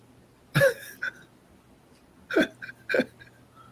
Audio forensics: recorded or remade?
recorded